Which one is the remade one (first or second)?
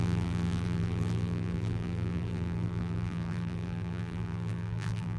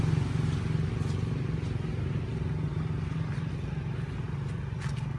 first